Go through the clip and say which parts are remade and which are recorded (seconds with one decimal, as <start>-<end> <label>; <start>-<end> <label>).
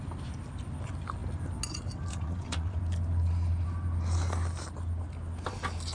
0.0-2.1 recorded; 2.1-2.8 remade; 2.8-5.9 recorded